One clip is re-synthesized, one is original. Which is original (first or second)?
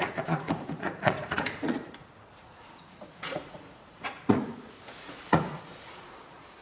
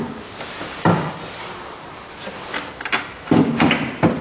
second